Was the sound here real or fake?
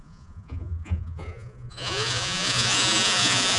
fake